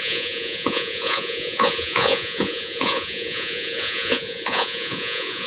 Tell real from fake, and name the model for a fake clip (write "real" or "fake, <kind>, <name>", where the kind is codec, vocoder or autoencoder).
fake, vocoder, Vocos